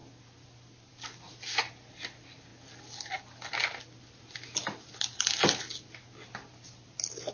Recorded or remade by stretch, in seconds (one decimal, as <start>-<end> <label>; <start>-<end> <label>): 0.0-7.3 recorded